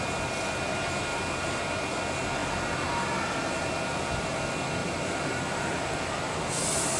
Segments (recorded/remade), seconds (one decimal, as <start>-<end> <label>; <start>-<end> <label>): 0.0-1.1 recorded; 1.1-1.6 remade; 1.6-4.8 recorded; 4.8-5.8 remade; 5.8-7.0 recorded